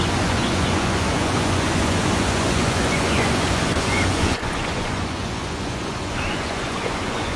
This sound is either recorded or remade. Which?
remade